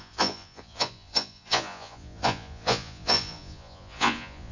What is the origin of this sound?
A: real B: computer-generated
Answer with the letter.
B